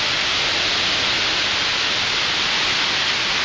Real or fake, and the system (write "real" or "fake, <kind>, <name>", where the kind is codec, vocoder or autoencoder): real